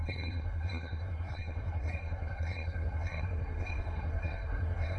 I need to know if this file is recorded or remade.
remade